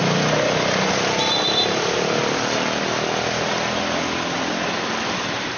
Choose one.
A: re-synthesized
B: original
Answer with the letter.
B